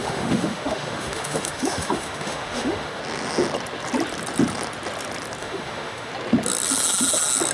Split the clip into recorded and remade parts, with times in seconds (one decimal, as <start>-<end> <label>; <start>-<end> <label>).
0.0-3.0 remade; 3.0-5.4 recorded; 5.4-6.1 remade; 6.1-7.5 recorded